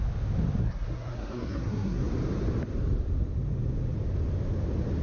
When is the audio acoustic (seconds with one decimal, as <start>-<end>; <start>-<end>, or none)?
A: 0.0-0.6; 2.1-5.0